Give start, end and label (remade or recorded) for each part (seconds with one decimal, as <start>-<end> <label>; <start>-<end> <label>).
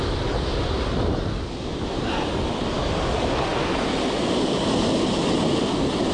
0.0-1.7 recorded; 1.7-2.7 remade; 2.7-6.1 recorded